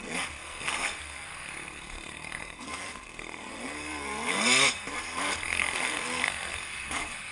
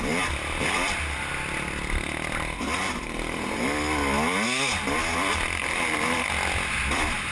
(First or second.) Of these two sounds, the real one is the second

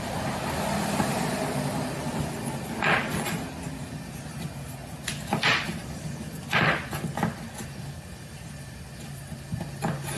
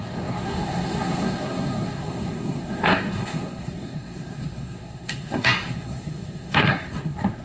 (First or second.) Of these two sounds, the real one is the first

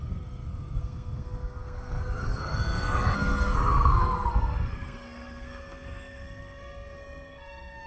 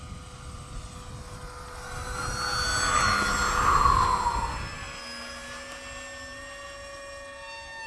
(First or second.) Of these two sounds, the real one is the second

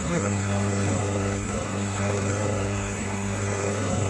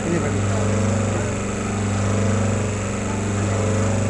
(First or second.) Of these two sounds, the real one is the second